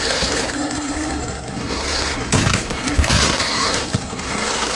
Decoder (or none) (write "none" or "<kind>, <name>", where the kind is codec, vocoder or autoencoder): codec, SNAC